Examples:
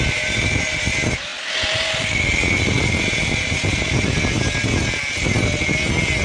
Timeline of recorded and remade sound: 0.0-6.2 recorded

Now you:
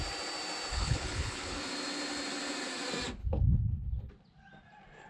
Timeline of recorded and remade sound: 0.0-0.7 recorded; 0.7-1.6 remade; 1.6-3.2 recorded; 3.2-4.1 remade; 4.1-5.1 recorded

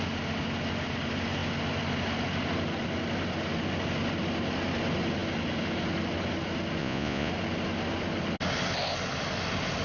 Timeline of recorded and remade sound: 0.0-6.8 recorded; 6.8-7.3 remade; 7.3-9.8 recorded

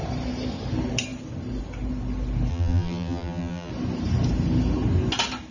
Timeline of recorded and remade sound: 0.0-2.5 recorded; 2.5-3.7 remade; 3.7-5.5 recorded

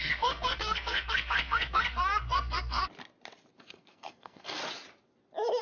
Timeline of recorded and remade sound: 0.0-2.8 remade; 2.8-3.6 recorded; 3.6-4.6 remade; 4.6-5.6 recorded